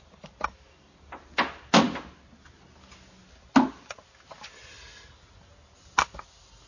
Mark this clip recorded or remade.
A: recorded